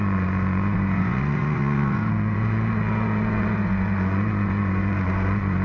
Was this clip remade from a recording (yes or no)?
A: yes